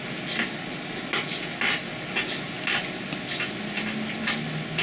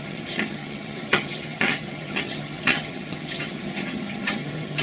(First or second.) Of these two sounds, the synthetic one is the second